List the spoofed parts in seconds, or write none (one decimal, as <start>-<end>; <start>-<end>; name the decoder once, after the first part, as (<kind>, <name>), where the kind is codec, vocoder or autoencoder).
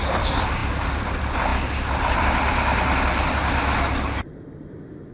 0.0-1.5 (vocoder, BigVGAN v2); 2.2-5.1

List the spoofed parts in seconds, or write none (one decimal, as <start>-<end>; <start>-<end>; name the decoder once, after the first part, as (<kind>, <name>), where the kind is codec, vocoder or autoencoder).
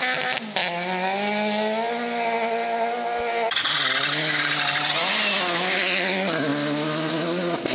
none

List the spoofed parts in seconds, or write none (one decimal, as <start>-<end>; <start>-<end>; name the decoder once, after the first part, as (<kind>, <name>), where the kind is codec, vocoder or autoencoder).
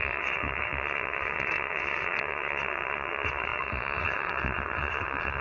0.0-5.4 (vocoder, WaveNeXt)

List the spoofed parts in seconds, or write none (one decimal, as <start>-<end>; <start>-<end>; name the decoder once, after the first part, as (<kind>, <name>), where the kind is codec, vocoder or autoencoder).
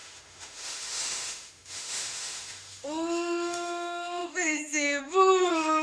0.0-5.8 (autoencoder, DAC-VAE)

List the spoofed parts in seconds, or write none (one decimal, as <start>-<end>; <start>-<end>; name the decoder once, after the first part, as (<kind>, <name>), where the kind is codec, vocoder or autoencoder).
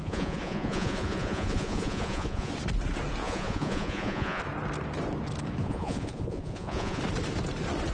0.0-2.5 (vocoder, Vocos); 3.2-4.4; 5.6-7.0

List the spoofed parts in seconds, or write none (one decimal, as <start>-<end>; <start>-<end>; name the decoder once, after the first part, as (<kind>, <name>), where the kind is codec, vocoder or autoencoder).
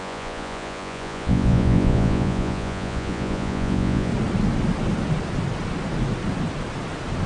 0.0-4.1 (vocoder, Vocos)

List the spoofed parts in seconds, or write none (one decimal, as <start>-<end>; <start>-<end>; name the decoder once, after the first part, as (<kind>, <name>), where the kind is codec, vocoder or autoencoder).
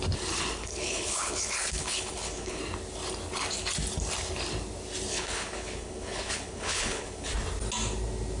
0.6-2.6 (codec, HILCodec); 5.1-7.3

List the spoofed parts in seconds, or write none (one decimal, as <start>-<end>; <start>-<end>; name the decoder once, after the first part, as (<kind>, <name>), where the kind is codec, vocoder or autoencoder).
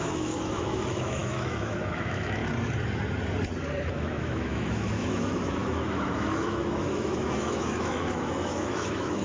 0.0-2.4 (autoencoder, DAC-VAE); 3.9-9.2